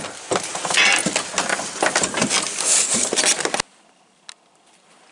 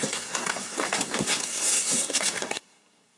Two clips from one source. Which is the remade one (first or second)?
second